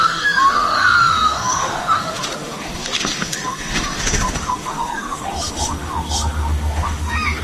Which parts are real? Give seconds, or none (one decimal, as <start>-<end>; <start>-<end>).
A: none